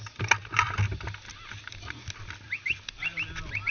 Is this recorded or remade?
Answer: recorded